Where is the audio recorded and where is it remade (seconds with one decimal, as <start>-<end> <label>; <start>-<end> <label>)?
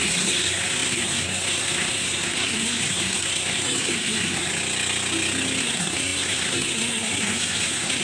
0.0-4.5 remade; 4.5-5.6 recorded; 5.6-8.0 remade